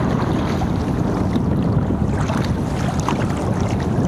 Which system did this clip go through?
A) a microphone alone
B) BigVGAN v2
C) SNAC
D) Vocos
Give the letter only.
A